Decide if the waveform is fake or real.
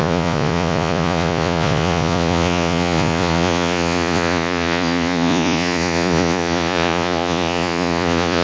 fake